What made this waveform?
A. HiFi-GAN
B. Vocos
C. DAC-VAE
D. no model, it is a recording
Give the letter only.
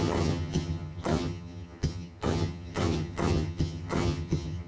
A